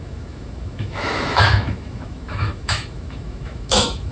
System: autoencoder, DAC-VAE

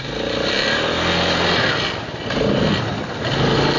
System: none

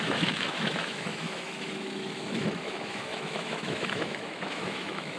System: autoencoder, DAC-VAE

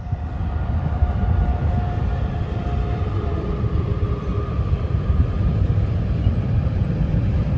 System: vocoder, BigVGAN v2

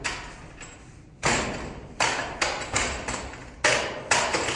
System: none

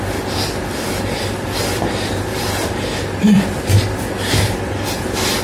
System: none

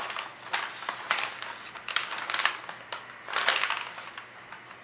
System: none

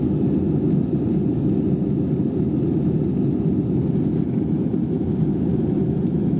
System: none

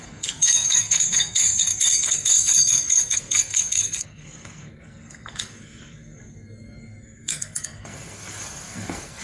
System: codec, SNAC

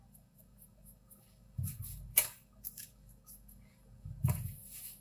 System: codec, DAC